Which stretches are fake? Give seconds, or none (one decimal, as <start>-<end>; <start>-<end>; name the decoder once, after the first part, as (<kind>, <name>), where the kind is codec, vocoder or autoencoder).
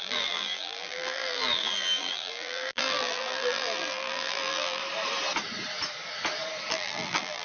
0.0-4.8 (vocoder, BigVGAN v2); 6.7-7.4